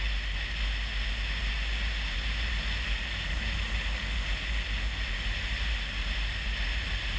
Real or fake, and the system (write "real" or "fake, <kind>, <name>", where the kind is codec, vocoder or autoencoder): real